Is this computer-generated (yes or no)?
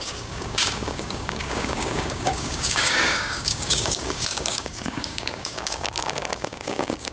yes